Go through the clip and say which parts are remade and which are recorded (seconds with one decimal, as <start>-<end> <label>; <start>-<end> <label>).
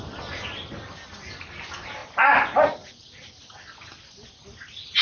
0.0-5.0 recorded